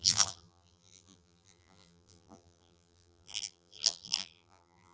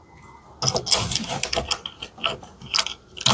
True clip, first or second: second